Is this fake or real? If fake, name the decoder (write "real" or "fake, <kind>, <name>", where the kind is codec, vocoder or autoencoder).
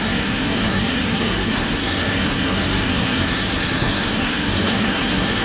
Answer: fake, codec, SNAC